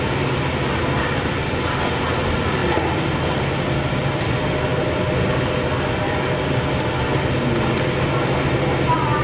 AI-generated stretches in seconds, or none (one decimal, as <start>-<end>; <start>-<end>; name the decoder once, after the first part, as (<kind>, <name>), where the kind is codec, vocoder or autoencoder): none